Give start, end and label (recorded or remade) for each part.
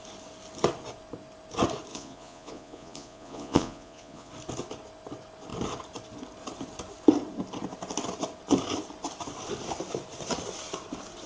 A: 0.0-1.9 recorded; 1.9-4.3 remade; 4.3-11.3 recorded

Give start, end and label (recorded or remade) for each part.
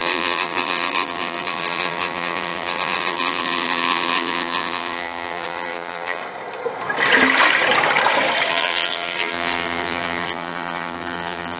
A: 0.0-6.2 remade; 6.2-8.5 recorded; 8.5-11.6 remade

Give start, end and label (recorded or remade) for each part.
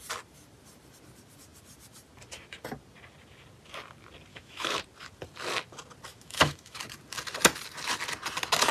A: 0.0-4.3 recorded; 4.3-4.8 remade; 4.8-6.1 recorded; 6.1-6.8 remade; 6.8-8.7 recorded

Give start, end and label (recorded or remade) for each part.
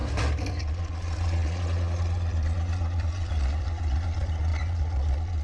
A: 0.0-0.6 recorded; 0.6-5.4 remade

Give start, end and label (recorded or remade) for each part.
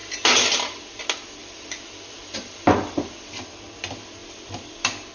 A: 0.0-1.4 recorded; 1.4-3.1 remade; 3.1-4.2 recorded; 4.2-5.1 remade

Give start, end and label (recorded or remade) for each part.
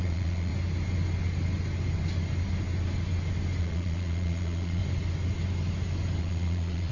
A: 0.0-0.5 remade; 0.5-3.6 recorded; 3.6-4.8 remade; 4.8-6.2 recorded; 6.2-6.9 remade